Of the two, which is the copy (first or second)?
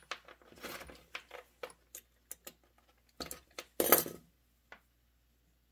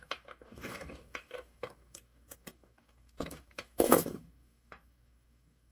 second